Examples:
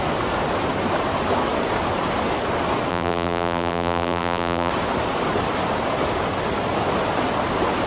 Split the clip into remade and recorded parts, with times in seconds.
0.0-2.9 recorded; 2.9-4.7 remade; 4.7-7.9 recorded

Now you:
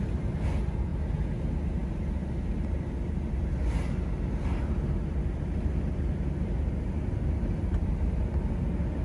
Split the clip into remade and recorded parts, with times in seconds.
0.0-9.0 recorded

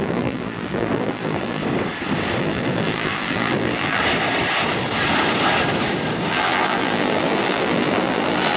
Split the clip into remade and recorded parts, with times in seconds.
0.0-1.6 remade; 1.6-2.4 recorded; 2.4-4.0 remade; 4.0-6.3 recorded; 6.3-8.6 remade

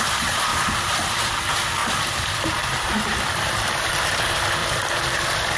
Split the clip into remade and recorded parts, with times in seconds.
0.0-1.8 recorded; 1.8-3.9 remade; 3.9-4.6 recorded; 4.6-5.6 remade

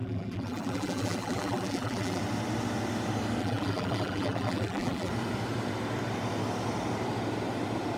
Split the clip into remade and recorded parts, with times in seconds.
0.0-2.2 remade; 2.2-3.4 recorded; 3.4-5.1 remade; 5.1-8.0 recorded